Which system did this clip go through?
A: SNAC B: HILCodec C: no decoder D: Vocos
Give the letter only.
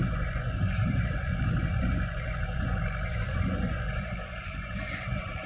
D